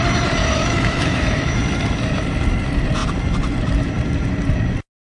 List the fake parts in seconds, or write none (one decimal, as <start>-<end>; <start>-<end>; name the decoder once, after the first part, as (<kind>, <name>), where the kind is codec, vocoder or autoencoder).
0.4-1.6 (autoencoder, DAC-VAE)